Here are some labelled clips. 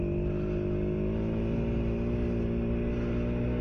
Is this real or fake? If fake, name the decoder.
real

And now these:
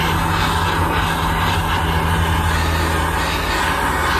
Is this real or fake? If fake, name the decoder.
real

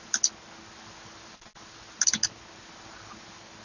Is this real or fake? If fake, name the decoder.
real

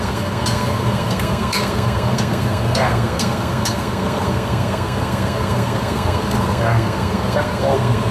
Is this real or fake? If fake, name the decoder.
fake, codec, SNAC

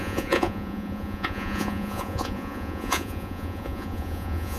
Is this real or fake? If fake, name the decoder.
fake, vocoder, Vocos